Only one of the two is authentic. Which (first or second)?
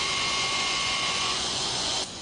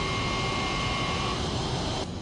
second